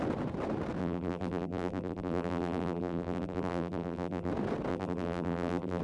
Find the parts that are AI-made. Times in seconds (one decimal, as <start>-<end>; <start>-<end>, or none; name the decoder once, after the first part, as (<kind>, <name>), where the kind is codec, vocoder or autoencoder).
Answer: 0.8-4.3 (vocoder, BigVGAN v2); 4.7-5.8